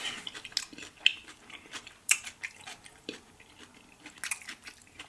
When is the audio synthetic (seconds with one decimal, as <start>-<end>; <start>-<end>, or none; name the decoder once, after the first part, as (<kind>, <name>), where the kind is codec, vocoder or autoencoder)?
1.1-4.2 (vocoder, BigVGAN v2)